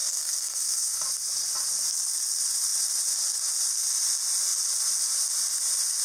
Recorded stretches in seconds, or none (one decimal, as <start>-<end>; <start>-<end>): 1.0-6.0